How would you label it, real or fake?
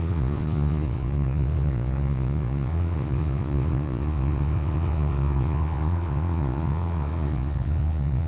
fake